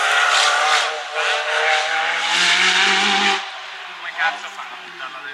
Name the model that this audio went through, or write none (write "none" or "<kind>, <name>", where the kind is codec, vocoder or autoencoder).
none